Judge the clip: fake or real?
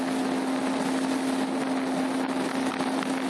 real